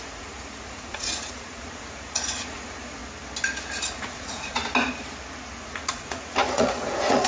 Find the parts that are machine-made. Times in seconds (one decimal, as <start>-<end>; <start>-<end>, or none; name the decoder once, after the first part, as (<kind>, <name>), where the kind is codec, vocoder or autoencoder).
0.0-3.0 (vocoder, Vocos); 3.9-4.6; 5.6-7.3